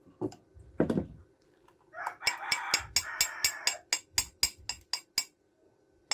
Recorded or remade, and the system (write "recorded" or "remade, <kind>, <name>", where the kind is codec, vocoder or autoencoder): recorded